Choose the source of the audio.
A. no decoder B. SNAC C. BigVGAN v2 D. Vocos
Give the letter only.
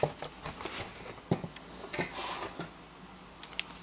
A